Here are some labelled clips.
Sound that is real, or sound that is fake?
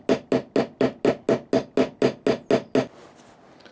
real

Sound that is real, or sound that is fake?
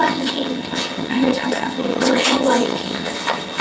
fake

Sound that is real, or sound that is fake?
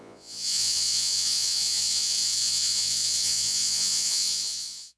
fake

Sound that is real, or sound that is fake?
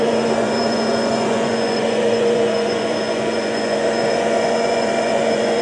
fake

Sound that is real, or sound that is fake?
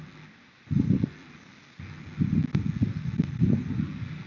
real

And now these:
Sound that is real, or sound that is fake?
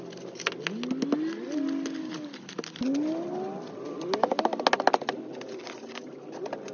real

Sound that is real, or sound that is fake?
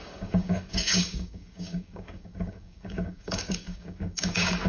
fake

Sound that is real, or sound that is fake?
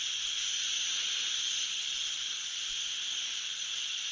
real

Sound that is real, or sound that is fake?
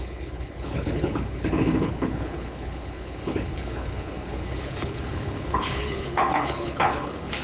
fake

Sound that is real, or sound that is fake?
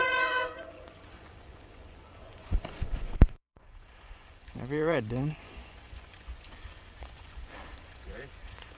fake